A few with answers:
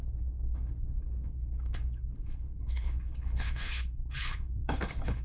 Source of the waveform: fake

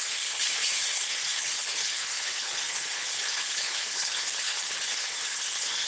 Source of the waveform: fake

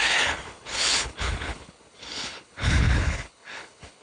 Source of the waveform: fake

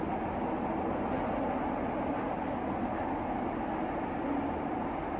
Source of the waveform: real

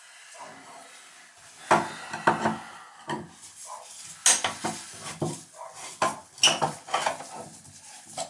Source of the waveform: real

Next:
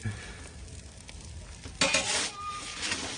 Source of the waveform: real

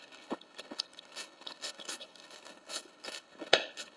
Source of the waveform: fake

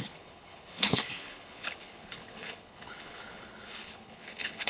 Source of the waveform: fake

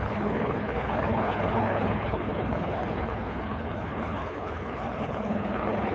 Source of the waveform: fake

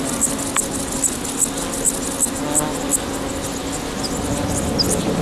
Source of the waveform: real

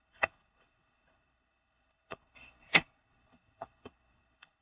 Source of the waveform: fake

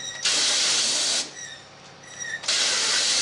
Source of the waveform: real